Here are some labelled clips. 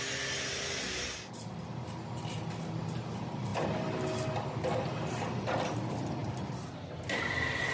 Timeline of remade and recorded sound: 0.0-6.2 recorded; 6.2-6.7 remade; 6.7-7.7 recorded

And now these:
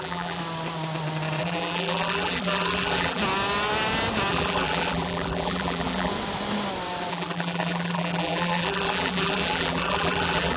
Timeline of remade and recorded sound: 0.0-0.4 remade; 0.4-1.4 recorded; 1.4-3.2 remade; 3.2-4.3 recorded; 4.3-6.1 remade; 6.1-7.1 recorded; 7.1-10.6 remade

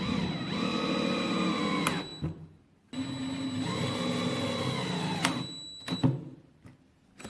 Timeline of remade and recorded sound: 0.0-7.3 recorded